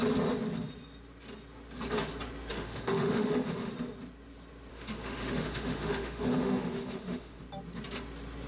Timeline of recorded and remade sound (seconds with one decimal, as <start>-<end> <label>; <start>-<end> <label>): 0.0-2.5 recorded; 2.5-3.7 remade; 3.7-4.7 recorded; 4.7-7.4 remade; 7.4-8.5 recorded